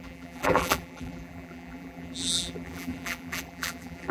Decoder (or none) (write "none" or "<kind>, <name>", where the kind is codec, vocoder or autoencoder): vocoder, BigVGAN v2